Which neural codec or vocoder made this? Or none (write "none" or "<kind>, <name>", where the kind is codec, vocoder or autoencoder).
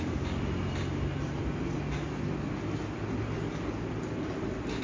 none